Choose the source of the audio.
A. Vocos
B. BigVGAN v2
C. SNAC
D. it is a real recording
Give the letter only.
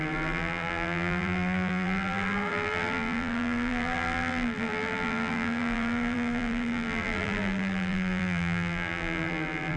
B